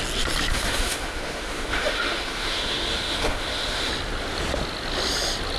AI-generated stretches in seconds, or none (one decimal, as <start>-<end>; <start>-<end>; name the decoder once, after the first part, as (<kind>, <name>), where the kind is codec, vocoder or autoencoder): 0.5-3.9 (autoencoder, DAC-VAE)

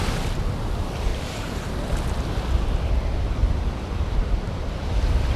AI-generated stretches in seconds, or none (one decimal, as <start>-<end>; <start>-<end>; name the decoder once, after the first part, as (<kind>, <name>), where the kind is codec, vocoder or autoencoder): 1.1-1.7 (vocoder, BigVGAN v2); 3.4-5.4

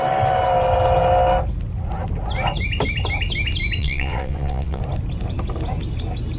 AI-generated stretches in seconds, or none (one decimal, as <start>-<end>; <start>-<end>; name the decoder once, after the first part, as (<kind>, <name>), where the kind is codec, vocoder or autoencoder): 3.8-4.8 (vocoder, WaveNeXt)

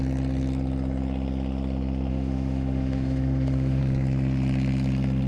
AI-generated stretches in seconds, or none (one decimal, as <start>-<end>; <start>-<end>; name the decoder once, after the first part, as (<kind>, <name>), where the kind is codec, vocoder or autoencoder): 2.1-3.8 (autoencoder, DAC-VAE)

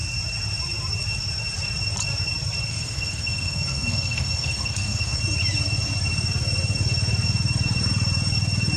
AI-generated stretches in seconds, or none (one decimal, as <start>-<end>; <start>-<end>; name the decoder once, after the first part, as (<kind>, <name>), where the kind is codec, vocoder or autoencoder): 2.7-5.2 (codec, SNAC)